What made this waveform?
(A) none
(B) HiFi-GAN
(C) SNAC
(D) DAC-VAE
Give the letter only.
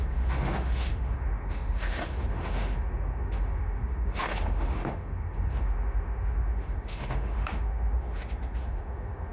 D